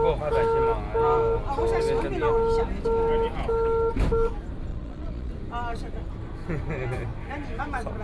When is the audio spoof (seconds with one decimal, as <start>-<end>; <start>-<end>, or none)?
4.7-5.3